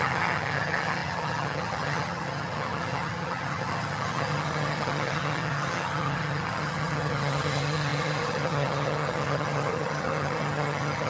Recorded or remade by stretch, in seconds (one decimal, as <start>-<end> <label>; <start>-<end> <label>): 0.0-11.1 remade

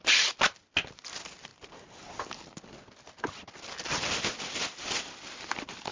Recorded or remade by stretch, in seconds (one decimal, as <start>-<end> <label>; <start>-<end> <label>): 0.0-5.9 recorded

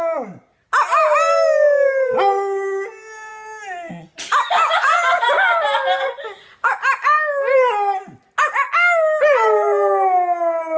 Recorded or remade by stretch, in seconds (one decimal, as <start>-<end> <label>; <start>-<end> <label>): 0.0-10.8 recorded